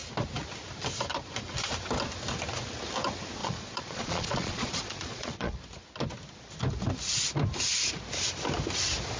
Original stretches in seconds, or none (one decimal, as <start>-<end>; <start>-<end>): 0.0-3.4; 5.6-9.2